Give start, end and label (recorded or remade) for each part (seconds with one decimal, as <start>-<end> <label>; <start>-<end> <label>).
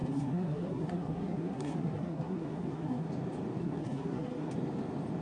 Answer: 0.0-3.1 remade; 3.1-3.6 recorded; 3.6-4.5 remade; 4.5-5.2 recorded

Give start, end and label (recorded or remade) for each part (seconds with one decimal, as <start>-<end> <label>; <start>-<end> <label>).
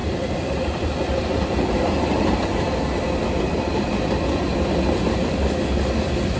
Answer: 0.0-2.4 remade; 2.4-6.4 recorded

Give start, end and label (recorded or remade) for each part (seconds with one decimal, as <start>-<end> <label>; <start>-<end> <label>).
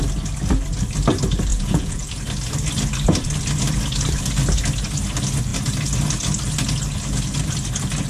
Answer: 0.0-1.5 recorded; 1.5-2.1 remade; 2.1-8.1 recorded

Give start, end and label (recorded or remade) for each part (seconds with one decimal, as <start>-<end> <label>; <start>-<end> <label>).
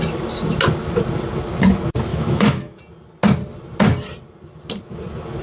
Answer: 0.0-2.1 recorded; 2.1-2.8 remade; 2.8-5.4 recorded